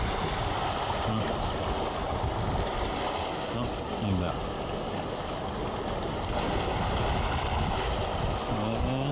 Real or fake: real